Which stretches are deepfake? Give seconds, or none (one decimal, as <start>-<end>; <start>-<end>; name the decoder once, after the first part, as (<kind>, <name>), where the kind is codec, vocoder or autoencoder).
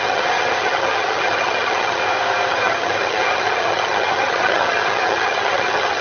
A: 0.0-2.0 (vocoder, HiFi-GAN); 2.5-6.0